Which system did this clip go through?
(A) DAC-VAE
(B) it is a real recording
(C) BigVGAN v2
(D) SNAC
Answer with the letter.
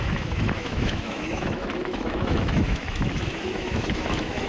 A